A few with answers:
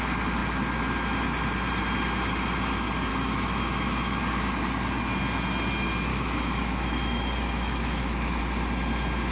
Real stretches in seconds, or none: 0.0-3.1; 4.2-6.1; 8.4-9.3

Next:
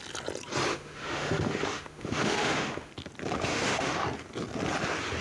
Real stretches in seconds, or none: 0.0-0.7; 2.9-3.5; 4.0-5.2

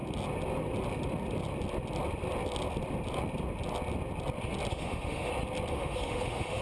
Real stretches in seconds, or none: 0.0-4.7; 5.3-5.7

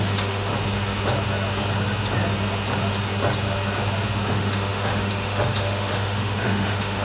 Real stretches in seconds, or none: 0.5-4.3

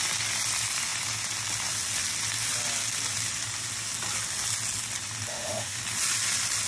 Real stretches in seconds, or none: 0.0-5.3; 5.8-6.7

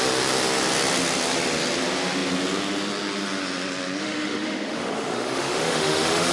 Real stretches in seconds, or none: 0.0-4.0